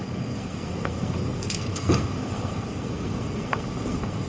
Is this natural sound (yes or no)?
no